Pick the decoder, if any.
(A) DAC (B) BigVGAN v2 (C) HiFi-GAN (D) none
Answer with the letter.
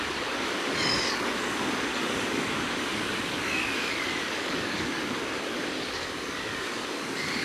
A